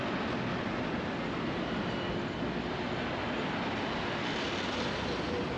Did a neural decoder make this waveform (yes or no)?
no